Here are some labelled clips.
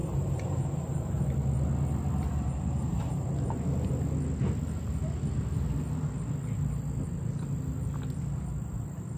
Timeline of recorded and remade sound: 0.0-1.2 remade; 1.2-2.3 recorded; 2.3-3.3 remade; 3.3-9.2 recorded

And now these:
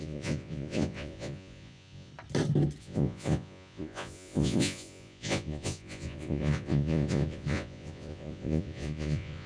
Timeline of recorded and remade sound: 0.0-2.1 remade; 2.1-2.8 recorded; 2.8-9.5 remade

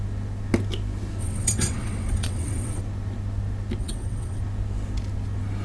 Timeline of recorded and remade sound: 0.0-1.2 recorded; 1.2-2.8 remade; 2.8-3.8 recorded; 3.8-4.4 remade; 4.4-5.6 recorded

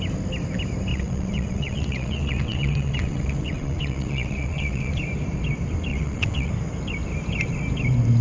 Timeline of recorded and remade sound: 0.0-0.9 recorded; 0.9-4.9 remade; 4.9-5.9 recorded; 5.9-6.5 remade; 6.5-8.2 recorded

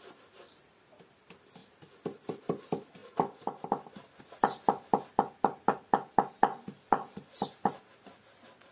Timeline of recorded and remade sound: 0.0-8.7 recorded

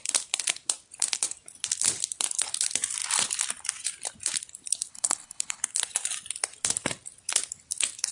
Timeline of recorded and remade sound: 0.0-4.9 recorded; 4.9-5.6 remade; 5.6-8.1 recorded

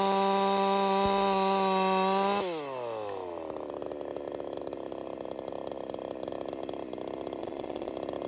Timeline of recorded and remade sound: 0.0-7.4 recorded; 7.4-7.9 remade; 7.9-8.3 recorded